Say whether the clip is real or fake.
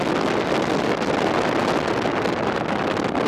real